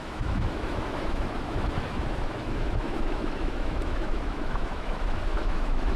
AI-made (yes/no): yes